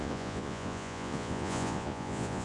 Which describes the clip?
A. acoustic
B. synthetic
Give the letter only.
B